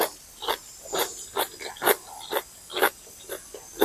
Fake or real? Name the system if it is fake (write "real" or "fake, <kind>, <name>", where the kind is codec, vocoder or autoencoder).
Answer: real